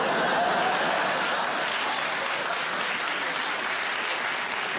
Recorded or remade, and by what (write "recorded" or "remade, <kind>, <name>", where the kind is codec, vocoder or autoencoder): recorded